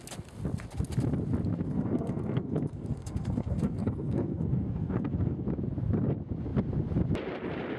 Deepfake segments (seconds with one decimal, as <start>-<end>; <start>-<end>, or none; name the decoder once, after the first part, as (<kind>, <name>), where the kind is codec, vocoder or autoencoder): 1.5-5.4 (codec, SNAC)